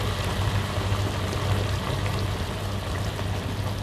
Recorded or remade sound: recorded